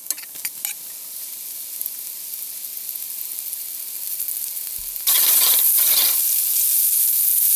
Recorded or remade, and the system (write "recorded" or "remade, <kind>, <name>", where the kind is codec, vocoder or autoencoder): recorded